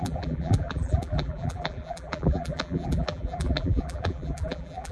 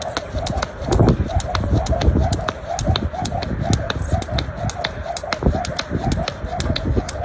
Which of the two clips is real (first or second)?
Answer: second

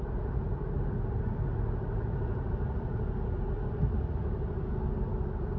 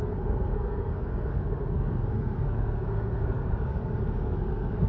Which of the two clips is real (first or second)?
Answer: first